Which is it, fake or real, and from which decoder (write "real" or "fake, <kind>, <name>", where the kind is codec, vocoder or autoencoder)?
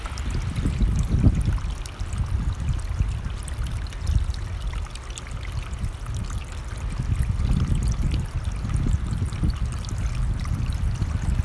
real